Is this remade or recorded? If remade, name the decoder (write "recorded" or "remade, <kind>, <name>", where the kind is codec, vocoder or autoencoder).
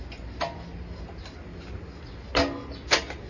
recorded